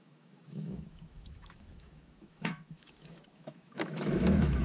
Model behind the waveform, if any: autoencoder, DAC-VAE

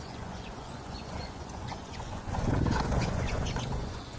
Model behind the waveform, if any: vocoder, Vocos